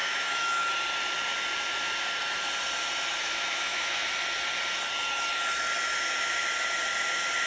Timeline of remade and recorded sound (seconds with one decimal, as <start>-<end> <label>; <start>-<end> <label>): 0.0-0.7 remade; 0.7-3.1 recorded; 3.1-4.1 remade; 4.1-7.5 recorded